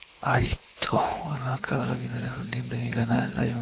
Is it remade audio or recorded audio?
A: remade